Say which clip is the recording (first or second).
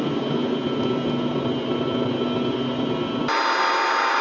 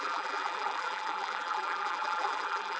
first